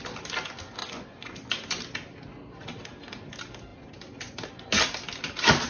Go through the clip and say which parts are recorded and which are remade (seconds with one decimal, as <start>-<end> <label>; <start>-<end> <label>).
0.0-0.8 recorded; 0.8-1.5 remade; 1.5-5.7 recorded